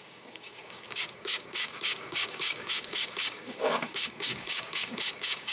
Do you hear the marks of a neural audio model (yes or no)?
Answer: yes